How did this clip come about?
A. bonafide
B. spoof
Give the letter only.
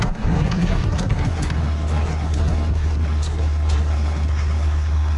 B